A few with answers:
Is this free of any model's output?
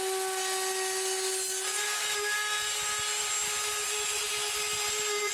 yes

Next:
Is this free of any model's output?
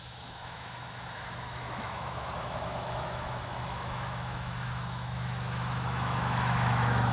no